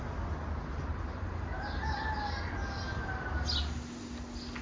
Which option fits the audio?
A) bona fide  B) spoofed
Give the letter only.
A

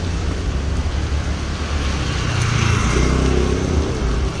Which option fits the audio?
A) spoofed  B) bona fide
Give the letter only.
B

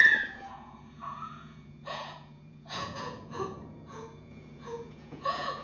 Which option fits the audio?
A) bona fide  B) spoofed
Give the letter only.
B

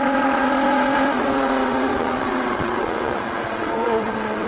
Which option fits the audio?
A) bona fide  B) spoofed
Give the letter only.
B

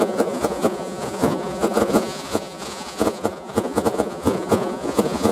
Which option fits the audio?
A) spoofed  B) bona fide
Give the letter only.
A